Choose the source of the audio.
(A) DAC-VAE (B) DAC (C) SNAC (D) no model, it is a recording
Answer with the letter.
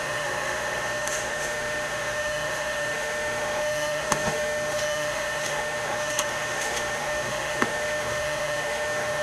A